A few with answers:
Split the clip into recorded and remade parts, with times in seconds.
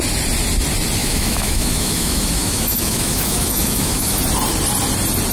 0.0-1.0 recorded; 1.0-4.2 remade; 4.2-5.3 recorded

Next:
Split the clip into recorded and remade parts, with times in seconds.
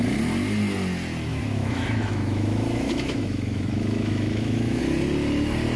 0.0-1.3 recorded; 1.3-4.8 remade; 4.8-5.8 recorded